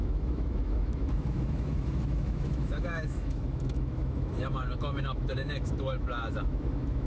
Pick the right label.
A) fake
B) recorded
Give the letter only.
A